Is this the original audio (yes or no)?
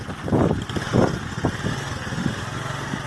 yes